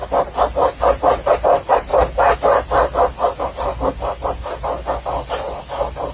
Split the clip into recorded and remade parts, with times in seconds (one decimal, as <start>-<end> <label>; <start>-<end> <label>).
0.0-6.1 recorded